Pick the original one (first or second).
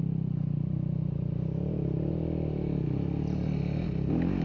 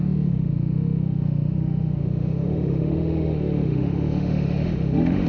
first